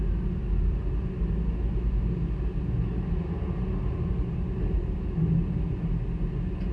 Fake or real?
real